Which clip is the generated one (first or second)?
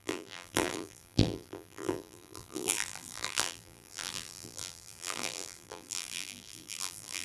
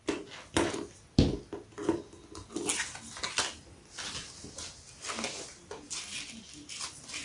first